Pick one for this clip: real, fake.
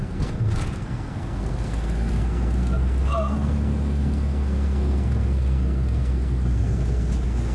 fake